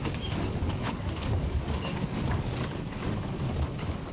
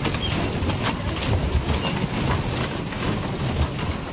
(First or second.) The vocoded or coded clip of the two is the first